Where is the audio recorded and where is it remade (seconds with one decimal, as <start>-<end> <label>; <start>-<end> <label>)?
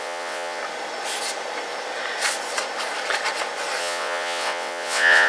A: 0.0-0.6 remade; 0.6-3.8 recorded; 3.8-5.3 remade